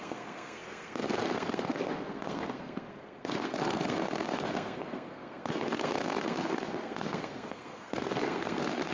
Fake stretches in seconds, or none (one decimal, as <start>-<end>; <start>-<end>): 0.0-8.9